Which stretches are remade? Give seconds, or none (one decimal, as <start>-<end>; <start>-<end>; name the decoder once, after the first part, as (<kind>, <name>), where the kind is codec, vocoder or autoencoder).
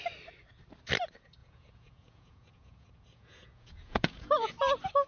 1.4-4.5 (vocoder, Vocos)